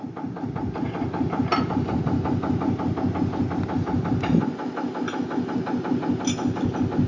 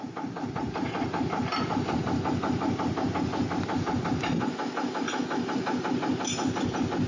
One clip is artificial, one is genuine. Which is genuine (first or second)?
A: first